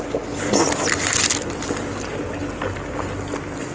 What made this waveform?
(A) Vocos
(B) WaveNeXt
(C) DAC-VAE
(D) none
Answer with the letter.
D